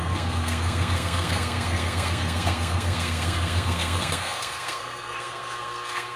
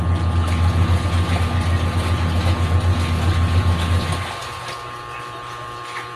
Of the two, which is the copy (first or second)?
first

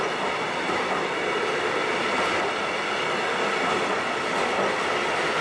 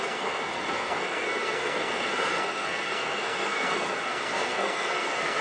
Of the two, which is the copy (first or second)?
second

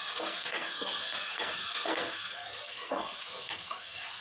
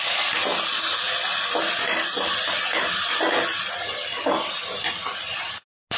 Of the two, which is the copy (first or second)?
first